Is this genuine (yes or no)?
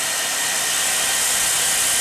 yes